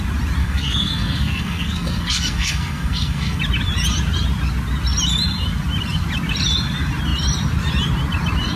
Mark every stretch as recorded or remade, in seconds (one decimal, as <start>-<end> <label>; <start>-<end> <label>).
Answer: 0.0-0.4 recorded; 0.4-3.4 remade; 3.4-8.6 recorded